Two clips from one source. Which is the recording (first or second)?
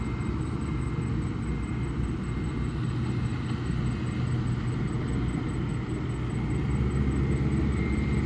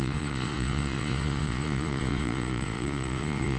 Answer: first